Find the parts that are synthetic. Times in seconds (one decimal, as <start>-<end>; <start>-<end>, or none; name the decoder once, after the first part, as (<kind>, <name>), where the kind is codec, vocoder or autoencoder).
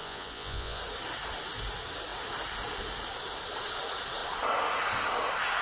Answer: 0.0-0.8 (vocoder, Vocos)